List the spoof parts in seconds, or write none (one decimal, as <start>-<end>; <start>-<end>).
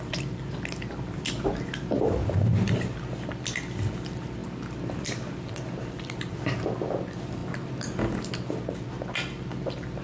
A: 2.5-3.0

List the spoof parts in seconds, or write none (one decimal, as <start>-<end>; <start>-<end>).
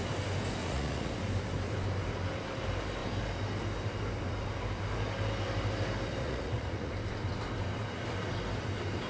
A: 0.6-1.1; 6.2-6.9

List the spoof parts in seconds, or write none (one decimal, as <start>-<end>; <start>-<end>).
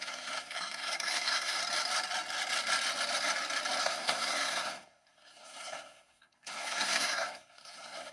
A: 0.0-1.6; 3.8-8.1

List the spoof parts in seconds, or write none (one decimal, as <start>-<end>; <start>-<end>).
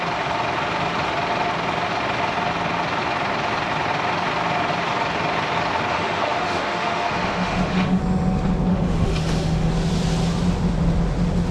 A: 5.9-8.0; 8.7-9.7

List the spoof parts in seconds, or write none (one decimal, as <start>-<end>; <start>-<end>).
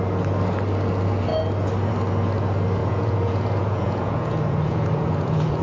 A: 2.8-5.6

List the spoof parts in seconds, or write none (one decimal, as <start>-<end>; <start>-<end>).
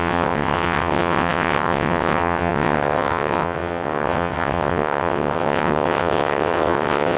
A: 0.0-7.2